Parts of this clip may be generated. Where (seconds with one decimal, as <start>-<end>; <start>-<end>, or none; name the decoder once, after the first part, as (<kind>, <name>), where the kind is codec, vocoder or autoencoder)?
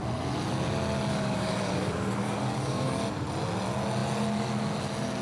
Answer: 1.1-3.0 (codec, DAC)